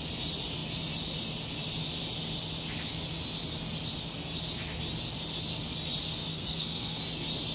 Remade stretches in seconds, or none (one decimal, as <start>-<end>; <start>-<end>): 6.3-7.0